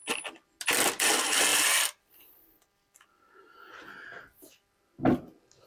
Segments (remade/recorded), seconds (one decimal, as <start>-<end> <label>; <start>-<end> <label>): 0.0-1.5 recorded; 1.5-3.3 remade; 3.3-5.7 recorded